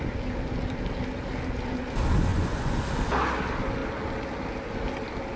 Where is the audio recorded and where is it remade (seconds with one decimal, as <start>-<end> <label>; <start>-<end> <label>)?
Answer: 0.0-2.3 recorded; 2.3-2.8 remade; 2.8-5.4 recorded